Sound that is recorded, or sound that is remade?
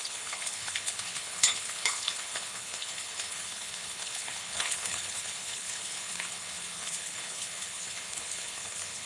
remade